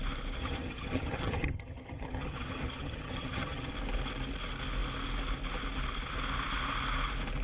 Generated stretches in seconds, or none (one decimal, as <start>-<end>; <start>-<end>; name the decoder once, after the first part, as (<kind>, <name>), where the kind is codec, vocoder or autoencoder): 0.4-3.7 (vocoder, HiFi-GAN)